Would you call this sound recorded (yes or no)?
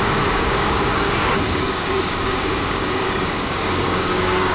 no